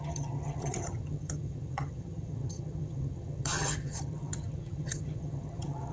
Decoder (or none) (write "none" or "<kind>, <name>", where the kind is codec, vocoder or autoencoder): vocoder, HiFi-GAN